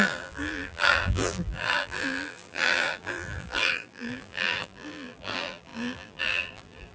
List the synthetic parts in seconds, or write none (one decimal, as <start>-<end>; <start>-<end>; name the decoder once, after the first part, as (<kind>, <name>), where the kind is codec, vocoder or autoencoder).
0.0-6.9 (vocoder, BigVGAN v2)